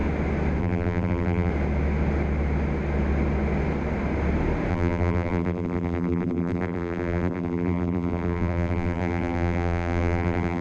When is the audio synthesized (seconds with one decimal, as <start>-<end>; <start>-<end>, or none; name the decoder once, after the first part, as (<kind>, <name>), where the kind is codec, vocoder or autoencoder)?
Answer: 0.6-1.5 (vocoder, BigVGAN v2); 4.7-10.6